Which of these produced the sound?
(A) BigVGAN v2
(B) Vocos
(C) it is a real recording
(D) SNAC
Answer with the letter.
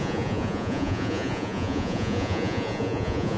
B